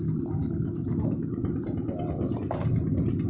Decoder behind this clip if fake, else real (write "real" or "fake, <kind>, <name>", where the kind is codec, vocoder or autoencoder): real